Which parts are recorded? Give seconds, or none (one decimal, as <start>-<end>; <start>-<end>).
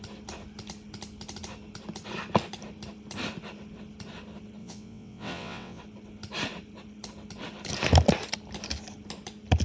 0.0-4.6; 5.8-9.6